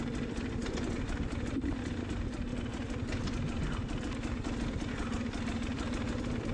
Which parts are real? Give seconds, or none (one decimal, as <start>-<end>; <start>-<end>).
0.0-6.5